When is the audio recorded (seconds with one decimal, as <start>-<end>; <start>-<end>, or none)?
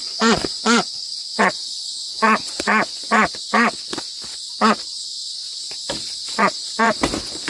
3.8-7.5